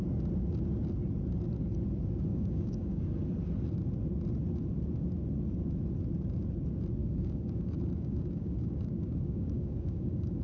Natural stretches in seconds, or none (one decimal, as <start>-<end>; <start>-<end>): 0.0-2.3; 3.0-7.0